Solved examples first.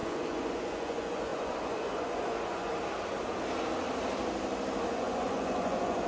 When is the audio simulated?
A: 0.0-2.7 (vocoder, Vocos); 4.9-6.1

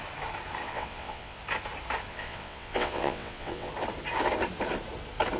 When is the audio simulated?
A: 0.6-1.4 (vocoder, WaveNeXt); 2.1-3.7

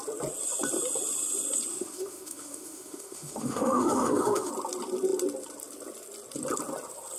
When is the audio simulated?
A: 1.7-4.5 (autoencoder, DAC-VAE)